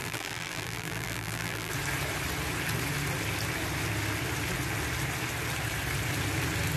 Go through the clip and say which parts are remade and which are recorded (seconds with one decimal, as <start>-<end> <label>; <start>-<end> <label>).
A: 0.0-1.7 remade; 1.7-6.8 recorded